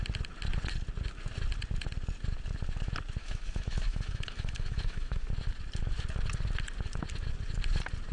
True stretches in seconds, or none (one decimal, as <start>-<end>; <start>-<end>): 0.0-3.2; 5.3-8.1